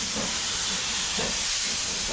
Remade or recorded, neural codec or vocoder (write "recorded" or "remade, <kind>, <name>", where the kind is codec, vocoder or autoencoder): recorded